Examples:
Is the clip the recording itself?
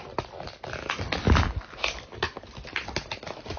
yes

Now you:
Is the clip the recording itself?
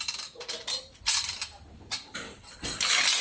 yes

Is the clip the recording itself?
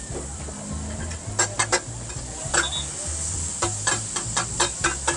yes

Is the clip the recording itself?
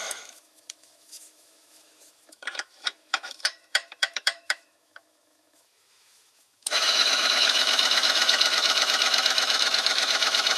no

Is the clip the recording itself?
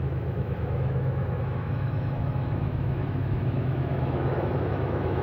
no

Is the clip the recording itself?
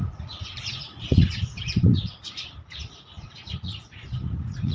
no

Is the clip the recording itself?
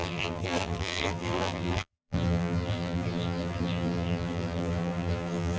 no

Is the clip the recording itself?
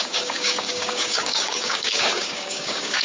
no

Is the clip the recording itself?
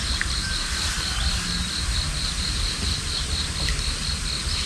yes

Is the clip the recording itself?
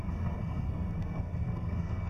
no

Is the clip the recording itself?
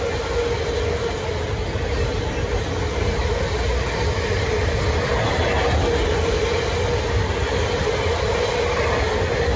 yes